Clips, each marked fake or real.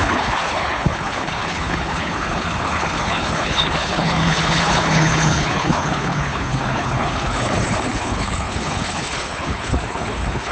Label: fake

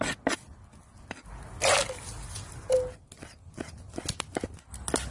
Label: real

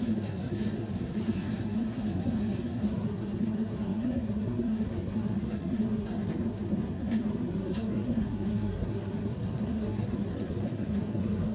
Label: fake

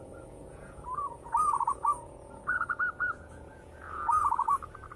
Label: fake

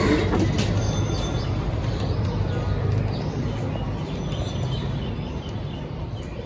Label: real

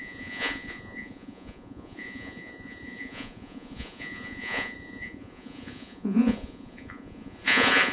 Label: fake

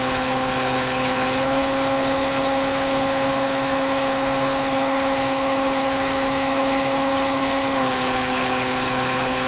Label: fake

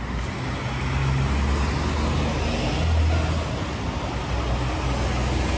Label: real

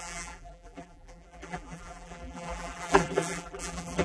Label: fake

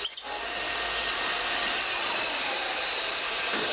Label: real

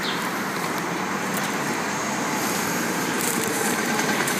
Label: fake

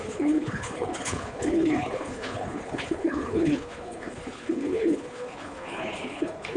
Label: fake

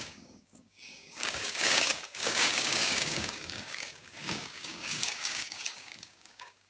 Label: fake